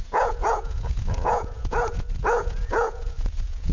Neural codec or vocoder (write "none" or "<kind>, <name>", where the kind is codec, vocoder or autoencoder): vocoder, Vocos